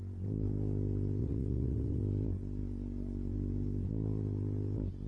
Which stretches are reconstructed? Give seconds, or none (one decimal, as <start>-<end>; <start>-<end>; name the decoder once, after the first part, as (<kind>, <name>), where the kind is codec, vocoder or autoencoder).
1.2-2.0 (vocoder, WaveNeXt)